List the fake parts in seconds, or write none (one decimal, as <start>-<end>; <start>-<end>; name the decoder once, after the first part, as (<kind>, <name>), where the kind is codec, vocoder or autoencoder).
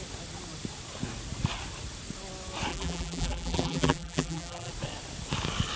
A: 2.7-4.7 (vocoder, BigVGAN v2)